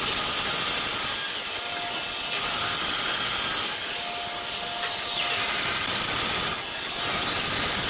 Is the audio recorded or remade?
recorded